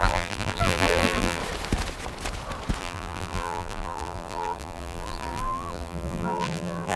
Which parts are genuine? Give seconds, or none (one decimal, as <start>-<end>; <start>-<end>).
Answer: 1.4-2.8